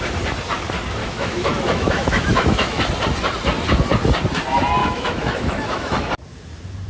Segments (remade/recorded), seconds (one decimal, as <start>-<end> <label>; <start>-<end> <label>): 0.0-1.0 recorded; 1.0-2.8 remade; 2.8-4.8 recorded; 4.8-6.1 remade; 6.1-6.9 recorded